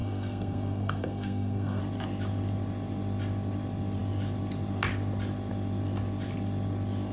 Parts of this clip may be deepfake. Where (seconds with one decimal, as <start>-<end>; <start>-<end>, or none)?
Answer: 0.0-1.8